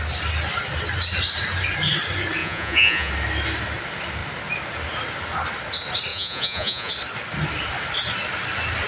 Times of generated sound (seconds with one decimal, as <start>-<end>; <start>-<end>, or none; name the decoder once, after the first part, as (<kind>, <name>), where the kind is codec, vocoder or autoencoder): 2.4-3.1 (vocoder, Vocos); 6.1-6.9